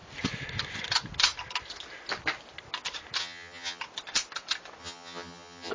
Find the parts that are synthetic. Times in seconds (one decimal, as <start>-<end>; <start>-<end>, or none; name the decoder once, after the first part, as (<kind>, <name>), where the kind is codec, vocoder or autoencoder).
3.2-3.8 (vocoder, HiFi-GAN); 4.8-5.7